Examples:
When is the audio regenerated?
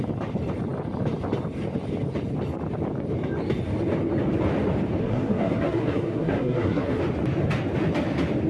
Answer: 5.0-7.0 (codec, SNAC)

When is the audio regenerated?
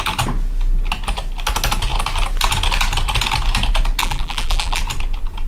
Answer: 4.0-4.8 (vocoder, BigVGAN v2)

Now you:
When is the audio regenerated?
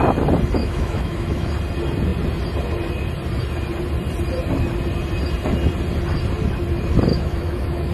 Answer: 0.6-1.5 (autoencoder, DAC-VAE); 7.1-7.9